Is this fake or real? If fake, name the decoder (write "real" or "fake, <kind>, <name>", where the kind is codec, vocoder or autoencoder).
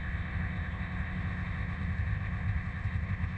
fake, codec, ZipCodec